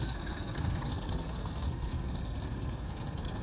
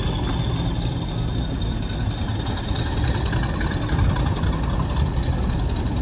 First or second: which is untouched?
second